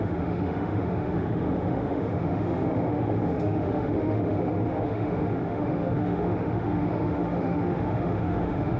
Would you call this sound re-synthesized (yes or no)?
yes